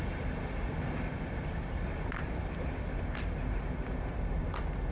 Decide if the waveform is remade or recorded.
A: recorded